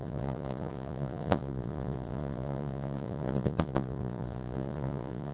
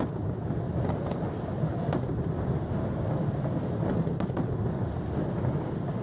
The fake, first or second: first